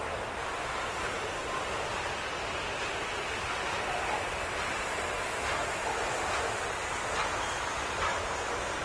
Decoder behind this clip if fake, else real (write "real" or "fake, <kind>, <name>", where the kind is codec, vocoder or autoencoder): real